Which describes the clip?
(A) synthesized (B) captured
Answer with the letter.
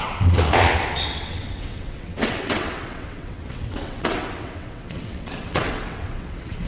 A